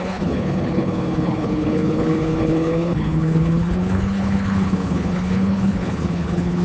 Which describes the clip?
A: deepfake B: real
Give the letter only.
A